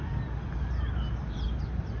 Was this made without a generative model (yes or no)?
yes